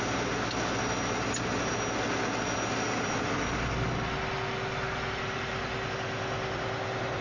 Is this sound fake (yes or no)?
no